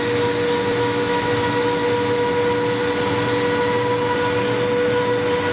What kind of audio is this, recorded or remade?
recorded